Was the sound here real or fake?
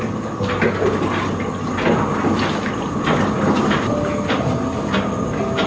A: real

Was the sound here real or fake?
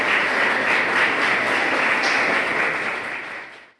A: real